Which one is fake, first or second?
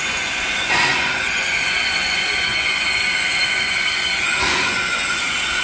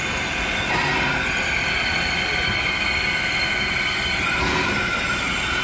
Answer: first